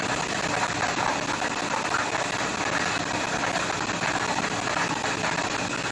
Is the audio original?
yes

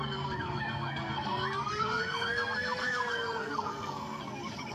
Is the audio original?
no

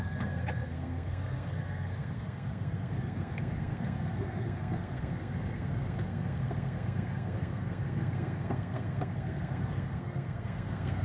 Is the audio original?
no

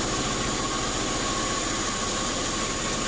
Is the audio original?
yes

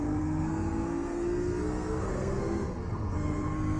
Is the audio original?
no